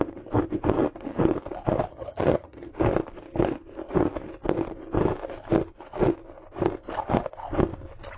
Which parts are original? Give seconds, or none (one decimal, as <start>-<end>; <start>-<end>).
0.0-1.9; 2.7-8.2